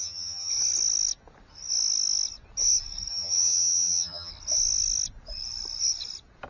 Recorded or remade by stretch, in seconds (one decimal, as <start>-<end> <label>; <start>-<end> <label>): 0.0-0.5 remade; 0.5-3.1 recorded; 3.1-4.3 remade; 4.3-6.5 recorded

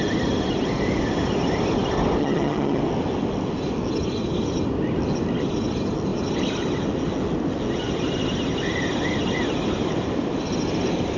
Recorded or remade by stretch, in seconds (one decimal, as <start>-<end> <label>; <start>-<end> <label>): 0.0-2.2 recorded; 2.2-2.8 remade; 2.8-11.2 recorded

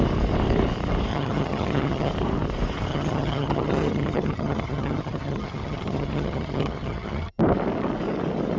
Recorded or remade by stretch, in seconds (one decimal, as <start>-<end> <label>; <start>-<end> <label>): 0.0-1.1 recorded; 1.1-2.1 remade; 2.1-2.9 recorded; 2.9-7.4 remade; 7.4-8.6 recorded

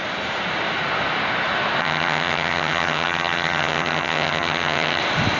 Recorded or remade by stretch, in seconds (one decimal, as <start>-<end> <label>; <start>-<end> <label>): 0.0-1.8 recorded; 1.8-5.0 remade; 5.0-5.4 recorded

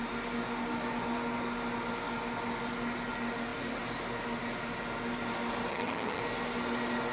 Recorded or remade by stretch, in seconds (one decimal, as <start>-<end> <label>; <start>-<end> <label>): 0.0-5.7 recorded; 5.7-6.2 remade; 6.2-7.1 recorded

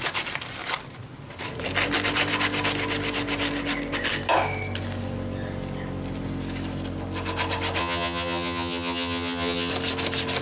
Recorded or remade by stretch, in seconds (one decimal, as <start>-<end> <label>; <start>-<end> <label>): 0.0-7.8 recorded; 7.8-9.7 remade; 9.7-10.4 recorded

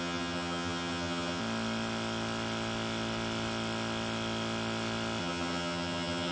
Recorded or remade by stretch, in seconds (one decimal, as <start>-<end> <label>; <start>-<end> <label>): 0.0-1.4 remade; 1.4-5.2 recorded; 5.2-6.3 remade